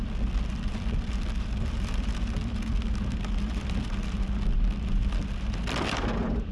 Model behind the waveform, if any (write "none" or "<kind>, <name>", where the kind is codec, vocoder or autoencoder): vocoder, BigVGAN v2